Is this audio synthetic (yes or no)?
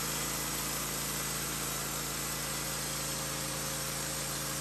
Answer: no